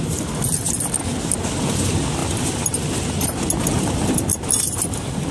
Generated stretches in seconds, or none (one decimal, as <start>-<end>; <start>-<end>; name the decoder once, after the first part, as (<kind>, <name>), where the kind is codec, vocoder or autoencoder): 2.2-2.8 (vocoder, BigVGAN v2); 4.3-5.3